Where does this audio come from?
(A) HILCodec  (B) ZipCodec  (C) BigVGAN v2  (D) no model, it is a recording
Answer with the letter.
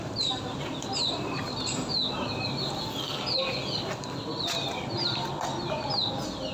D